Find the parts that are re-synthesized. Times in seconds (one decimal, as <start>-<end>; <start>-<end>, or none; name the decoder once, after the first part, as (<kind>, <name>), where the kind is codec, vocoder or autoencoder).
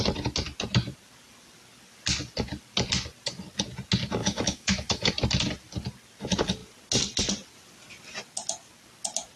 4.2-5.1 (autoencoder, DAC-VAE)